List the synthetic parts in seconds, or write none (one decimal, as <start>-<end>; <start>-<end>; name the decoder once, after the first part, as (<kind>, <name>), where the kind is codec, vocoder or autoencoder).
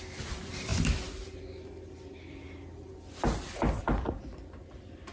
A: none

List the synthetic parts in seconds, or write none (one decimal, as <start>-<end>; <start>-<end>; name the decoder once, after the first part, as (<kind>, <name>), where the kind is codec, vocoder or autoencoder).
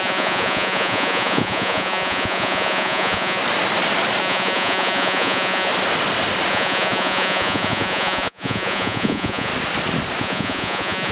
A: 0.0-3.4 (vocoder, Vocos); 4.2-5.7; 6.5-9.5; 10.2-11.1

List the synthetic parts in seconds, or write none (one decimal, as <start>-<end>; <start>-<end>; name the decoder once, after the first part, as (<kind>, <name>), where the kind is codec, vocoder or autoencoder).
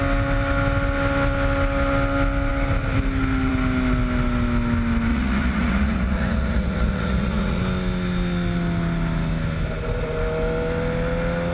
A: 5.1-7.6 (vocoder, Vocos)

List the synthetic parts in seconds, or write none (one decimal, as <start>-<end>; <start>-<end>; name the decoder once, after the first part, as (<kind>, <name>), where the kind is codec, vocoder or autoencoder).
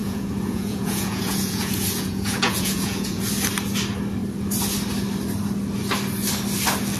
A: 0.0-3.2 (vocoder, Vocos)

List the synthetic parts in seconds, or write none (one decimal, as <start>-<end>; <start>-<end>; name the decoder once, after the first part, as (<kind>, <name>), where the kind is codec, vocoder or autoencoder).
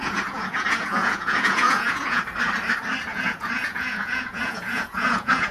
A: 0.0-2.2 (vocoder, Vocos); 3.1-5.5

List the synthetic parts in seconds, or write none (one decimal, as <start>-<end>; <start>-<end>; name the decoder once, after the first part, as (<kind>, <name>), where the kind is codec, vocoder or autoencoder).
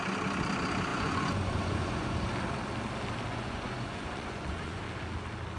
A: 0.9-2.2 (vocoder, Vocos); 3.3-4.8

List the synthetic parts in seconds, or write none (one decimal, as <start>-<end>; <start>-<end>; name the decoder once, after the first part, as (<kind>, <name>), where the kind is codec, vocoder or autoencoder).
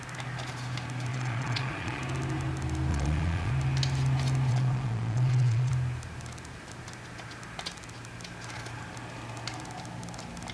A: 1.1-2.0 (vocoder, Vocos); 2.9-3.5; 4.5-5.7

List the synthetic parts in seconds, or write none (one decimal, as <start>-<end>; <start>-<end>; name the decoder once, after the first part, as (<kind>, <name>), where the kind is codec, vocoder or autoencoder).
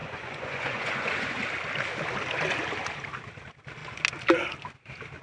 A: 0.0-1.4 (vocoder, Vocos)